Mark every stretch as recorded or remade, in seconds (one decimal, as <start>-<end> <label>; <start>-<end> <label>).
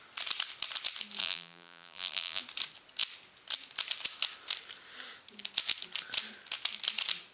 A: 0.0-1.2 recorded; 1.2-2.4 remade; 2.4-7.3 recorded